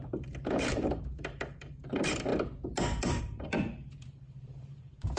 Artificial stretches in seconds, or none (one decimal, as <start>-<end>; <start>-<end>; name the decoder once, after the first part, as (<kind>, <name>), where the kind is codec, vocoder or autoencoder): 0.0-2.3 (vocoder, BigVGAN v2); 3.2-5.2